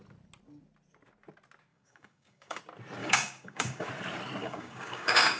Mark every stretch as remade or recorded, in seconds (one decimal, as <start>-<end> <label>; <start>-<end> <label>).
0.0-1.7 recorded; 1.7-2.6 remade; 2.6-3.0 recorded; 3.0-3.9 remade; 3.9-4.4 recorded; 4.4-5.4 remade